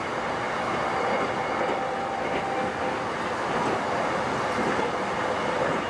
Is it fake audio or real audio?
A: real